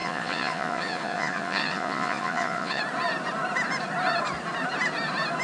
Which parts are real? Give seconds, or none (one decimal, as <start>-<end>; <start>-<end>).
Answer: 2.8-5.4